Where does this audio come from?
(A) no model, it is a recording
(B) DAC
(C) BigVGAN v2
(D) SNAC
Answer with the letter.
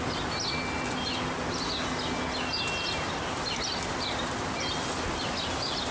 A